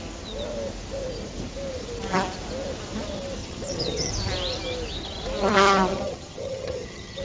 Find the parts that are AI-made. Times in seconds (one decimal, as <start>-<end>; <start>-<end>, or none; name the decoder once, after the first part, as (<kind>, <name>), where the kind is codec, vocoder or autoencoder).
3.4-4.1 (vocoder, HiFi-GAN); 5.9-7.2